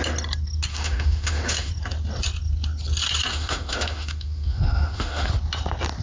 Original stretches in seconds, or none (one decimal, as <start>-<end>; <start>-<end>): 0.0-0.7; 1.7-3.3; 5.3-6.0